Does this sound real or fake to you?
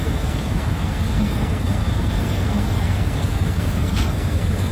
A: fake